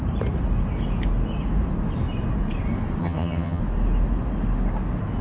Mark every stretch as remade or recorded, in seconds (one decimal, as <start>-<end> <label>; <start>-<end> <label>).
0.0-3.0 recorded; 3.0-3.6 remade; 3.6-5.2 recorded